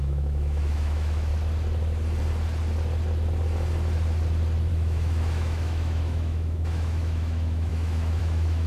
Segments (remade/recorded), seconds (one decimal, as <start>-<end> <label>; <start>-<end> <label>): 0.0-1.3 remade; 1.3-4.7 recorded; 4.7-8.7 remade